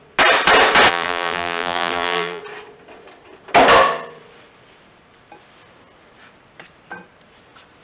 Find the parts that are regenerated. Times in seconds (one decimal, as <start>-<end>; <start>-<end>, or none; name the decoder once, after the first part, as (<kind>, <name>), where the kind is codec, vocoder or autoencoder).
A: 0.9-2.4 (vocoder, BigVGAN v2)

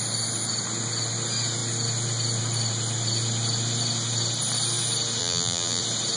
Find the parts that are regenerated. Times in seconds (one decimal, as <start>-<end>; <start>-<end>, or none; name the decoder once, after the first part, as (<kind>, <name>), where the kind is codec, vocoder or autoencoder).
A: 5.2-5.8 (vocoder, BigVGAN v2)

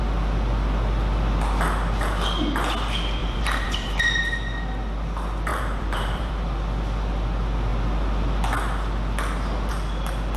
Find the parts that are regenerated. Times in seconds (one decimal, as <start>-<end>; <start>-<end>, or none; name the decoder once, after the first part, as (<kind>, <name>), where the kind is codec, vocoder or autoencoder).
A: 3.2-4.0 (vocoder, BigVGAN v2); 5.5-6.3

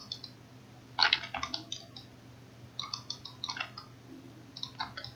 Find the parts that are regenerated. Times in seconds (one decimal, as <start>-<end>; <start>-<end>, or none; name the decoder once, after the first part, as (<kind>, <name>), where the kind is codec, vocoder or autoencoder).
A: none

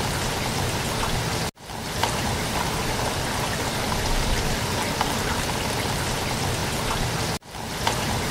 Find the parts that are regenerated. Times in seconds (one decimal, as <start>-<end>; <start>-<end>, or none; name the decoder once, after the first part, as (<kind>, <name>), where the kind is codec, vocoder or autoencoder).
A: 2.0-3.0 (vocoder, BigVGAN v2)

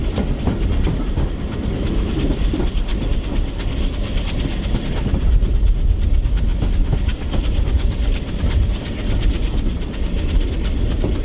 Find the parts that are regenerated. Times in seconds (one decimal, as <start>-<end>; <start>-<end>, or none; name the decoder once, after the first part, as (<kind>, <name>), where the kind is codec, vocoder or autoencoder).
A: 2.9-4.8 (vocoder, BigVGAN v2); 6.5-11.2

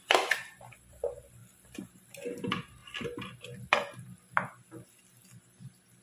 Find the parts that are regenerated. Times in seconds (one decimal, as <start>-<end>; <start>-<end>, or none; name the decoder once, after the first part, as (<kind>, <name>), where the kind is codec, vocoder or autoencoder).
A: 1.4-2.4 (vocoder, BigVGAN v2)